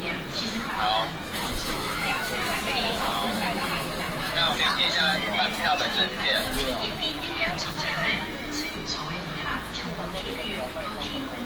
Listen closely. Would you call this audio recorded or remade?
remade